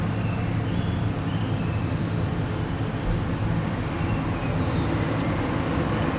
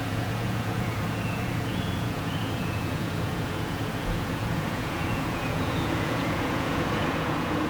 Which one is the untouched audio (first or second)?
first